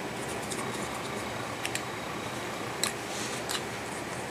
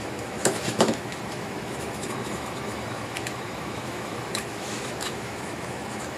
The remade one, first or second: second